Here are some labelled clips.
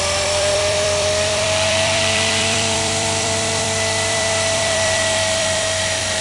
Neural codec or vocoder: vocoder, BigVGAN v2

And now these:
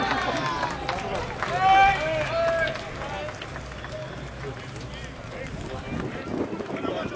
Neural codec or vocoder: none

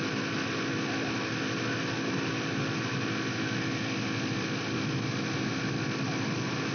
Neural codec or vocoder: none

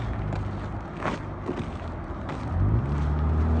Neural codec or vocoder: none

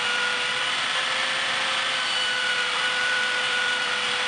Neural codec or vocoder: vocoder, BigVGAN v2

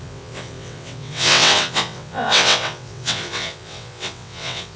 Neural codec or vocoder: vocoder, WaveNeXt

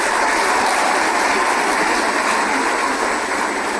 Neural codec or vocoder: none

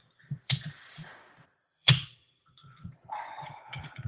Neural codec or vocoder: vocoder, Vocos